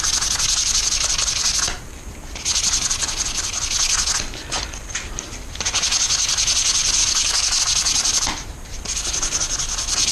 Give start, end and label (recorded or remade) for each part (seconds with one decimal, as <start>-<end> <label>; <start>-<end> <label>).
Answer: 0.0-7.0 recorded; 7.0-7.6 remade; 7.6-10.1 recorded